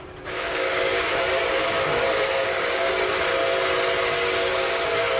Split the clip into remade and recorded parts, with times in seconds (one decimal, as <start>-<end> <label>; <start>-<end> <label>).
0.0-3.1 remade; 3.1-4.1 recorded; 4.1-5.2 remade